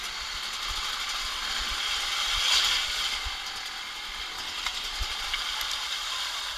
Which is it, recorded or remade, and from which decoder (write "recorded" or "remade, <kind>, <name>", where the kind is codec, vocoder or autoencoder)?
recorded